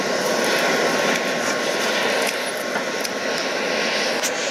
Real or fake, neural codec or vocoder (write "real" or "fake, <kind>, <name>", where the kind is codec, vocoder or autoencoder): real